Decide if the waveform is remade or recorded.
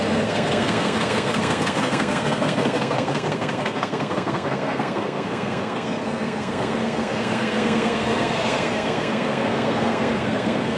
remade